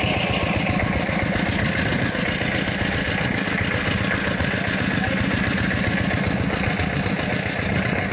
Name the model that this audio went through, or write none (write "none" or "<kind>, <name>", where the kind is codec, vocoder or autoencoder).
none